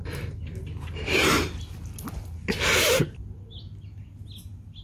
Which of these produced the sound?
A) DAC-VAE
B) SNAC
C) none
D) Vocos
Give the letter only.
C